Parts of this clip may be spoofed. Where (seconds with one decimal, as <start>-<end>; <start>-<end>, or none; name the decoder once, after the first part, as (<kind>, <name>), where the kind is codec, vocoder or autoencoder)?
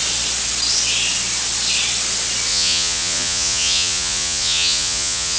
2.5-5.4 (vocoder, Vocos)